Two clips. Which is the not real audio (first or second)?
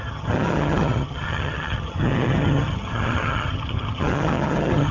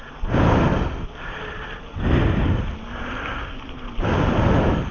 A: first